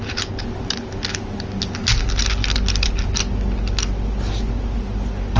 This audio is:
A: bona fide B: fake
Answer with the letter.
A